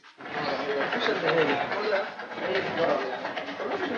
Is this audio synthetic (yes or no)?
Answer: no